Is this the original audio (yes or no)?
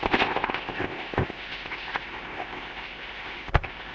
no